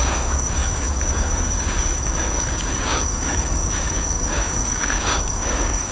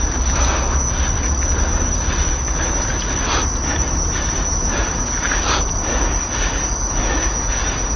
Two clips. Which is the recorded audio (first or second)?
second